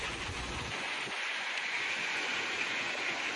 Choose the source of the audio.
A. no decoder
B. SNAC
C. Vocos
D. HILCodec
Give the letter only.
C